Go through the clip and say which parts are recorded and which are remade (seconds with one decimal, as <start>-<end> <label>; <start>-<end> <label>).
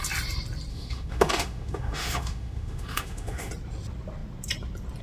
0.0-0.7 recorded; 0.7-3.5 remade; 3.5-5.0 recorded